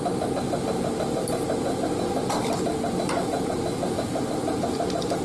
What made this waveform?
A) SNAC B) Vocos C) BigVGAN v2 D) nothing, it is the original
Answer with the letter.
D